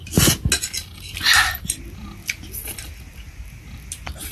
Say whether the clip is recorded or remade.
recorded